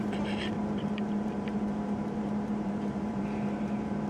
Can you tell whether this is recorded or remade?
remade